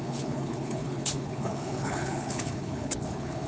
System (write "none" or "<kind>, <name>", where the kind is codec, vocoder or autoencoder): codec, HILCodec